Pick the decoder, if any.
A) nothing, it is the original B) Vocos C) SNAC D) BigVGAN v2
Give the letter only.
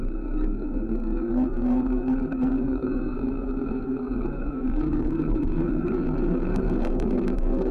C